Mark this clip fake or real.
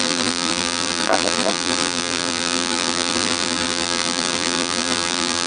fake